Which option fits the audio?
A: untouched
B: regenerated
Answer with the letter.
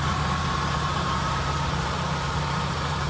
B